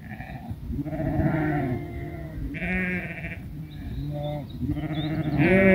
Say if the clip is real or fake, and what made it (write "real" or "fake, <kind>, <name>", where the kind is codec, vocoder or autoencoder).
real